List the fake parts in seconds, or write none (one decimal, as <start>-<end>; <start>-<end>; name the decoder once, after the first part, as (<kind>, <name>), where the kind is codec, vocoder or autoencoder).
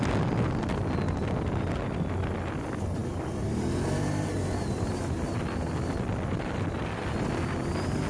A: none